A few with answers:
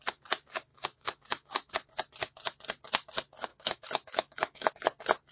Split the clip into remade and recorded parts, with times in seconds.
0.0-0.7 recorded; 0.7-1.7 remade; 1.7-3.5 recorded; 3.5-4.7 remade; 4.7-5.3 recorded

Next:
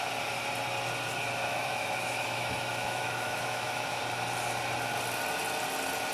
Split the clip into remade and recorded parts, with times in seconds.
0.0-1.5 recorded; 1.5-4.0 remade; 4.0-6.1 recorded